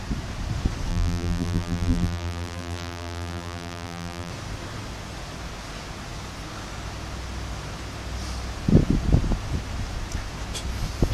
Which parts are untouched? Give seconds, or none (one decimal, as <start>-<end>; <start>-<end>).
0.0-0.9; 4.3-11.1